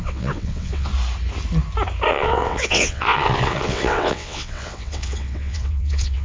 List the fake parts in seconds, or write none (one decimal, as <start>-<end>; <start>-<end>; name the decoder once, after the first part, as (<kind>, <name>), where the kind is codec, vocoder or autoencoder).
0.0-0.9 (vocoder, WaveNeXt); 2.1-6.2